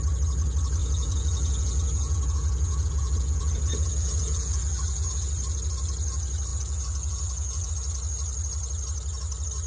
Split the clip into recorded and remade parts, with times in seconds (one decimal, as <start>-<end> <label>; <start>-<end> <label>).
0.0-0.8 recorded; 0.8-5.3 remade; 5.3-6.5 recorded; 6.5-7.7 remade; 7.7-9.7 recorded